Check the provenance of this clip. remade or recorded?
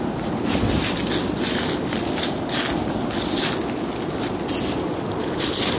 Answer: recorded